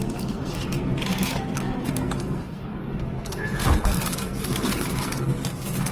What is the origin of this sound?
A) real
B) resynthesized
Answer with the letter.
B